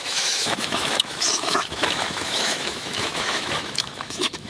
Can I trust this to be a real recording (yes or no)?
no